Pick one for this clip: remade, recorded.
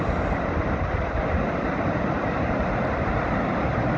recorded